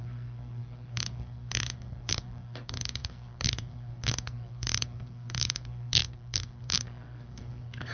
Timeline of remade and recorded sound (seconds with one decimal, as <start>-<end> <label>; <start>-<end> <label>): 0.0-7.9 remade